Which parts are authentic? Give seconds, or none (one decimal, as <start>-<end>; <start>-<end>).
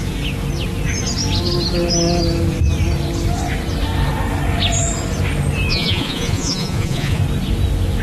0.0-5.7; 7.2-8.0